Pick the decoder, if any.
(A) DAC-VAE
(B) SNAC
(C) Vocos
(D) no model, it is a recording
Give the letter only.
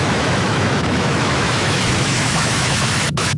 A